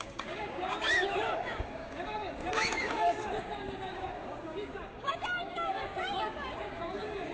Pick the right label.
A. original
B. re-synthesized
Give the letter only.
B